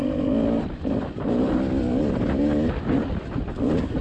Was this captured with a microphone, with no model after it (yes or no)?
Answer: yes